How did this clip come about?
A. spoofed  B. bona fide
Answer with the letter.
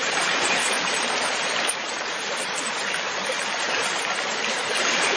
A